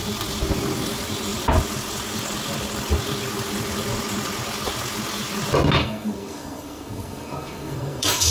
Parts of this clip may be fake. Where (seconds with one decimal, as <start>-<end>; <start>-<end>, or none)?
5.8-8.3